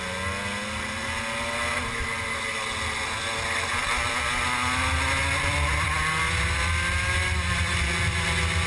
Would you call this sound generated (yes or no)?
no